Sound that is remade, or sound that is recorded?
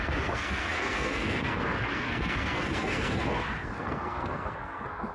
remade